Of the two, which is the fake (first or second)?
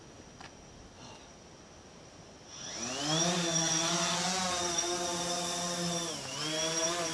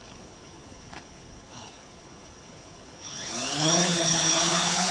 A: second